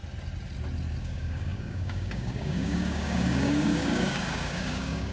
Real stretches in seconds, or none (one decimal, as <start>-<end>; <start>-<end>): 0.0-1.0